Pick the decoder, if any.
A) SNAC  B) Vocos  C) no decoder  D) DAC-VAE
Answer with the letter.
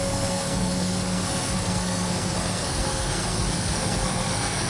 A